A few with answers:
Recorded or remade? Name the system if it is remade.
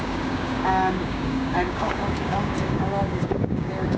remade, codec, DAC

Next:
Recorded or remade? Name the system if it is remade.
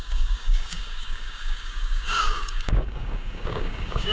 remade, codec, DAC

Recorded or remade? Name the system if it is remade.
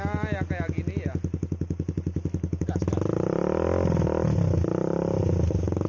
recorded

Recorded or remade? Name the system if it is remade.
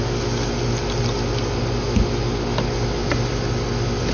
recorded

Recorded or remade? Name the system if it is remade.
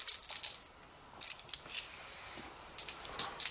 recorded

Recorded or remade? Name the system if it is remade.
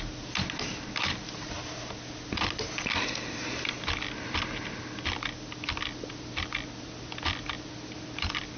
recorded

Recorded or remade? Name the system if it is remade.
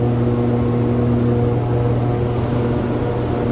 recorded